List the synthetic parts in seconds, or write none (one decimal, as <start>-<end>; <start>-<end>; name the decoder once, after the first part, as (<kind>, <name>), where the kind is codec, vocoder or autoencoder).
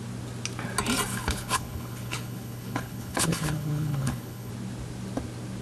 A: 1.1-4.5 (codec, HILCodec)